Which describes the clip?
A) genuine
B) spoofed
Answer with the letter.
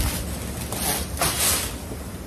A